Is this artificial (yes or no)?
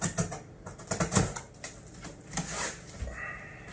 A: no